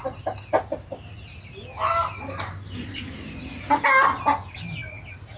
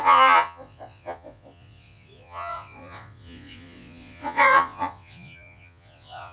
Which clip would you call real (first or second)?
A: first